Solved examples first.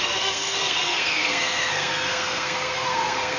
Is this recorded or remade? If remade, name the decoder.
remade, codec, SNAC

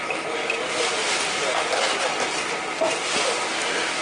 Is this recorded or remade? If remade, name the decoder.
recorded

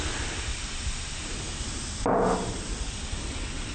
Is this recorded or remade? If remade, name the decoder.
recorded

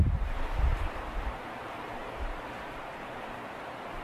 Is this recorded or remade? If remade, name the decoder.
remade, vocoder, BigVGAN v2